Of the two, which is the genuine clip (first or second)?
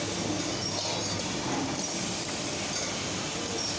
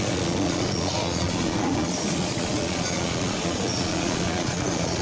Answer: first